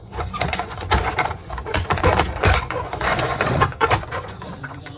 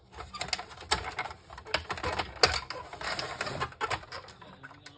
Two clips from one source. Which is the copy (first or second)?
first